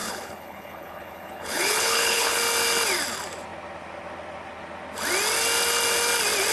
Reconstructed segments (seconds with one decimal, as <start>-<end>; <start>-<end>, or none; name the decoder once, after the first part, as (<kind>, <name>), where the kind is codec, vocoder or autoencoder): 0.0-2.4 (codec, HILCodec)

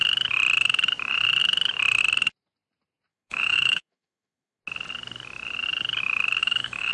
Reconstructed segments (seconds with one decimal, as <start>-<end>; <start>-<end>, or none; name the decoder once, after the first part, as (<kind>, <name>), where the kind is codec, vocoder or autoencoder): 3.1-4.6 (autoencoder, DAC-VAE); 6.4-6.9

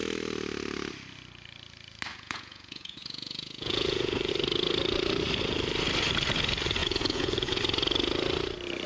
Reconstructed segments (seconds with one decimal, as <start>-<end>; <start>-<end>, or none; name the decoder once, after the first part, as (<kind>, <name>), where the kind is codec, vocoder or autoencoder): 2.1-4.3 (vocoder, Vocos); 6.8-7.6